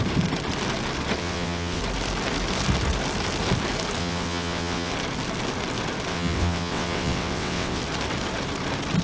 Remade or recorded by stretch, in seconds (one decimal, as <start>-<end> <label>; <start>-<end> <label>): 0.0-1.2 recorded; 1.2-1.8 remade; 1.8-4.0 recorded; 4.0-4.9 remade; 4.9-6.1 recorded; 6.1-7.8 remade; 7.8-9.0 recorded